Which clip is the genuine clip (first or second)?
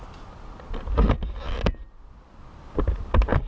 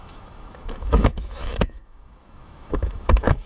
first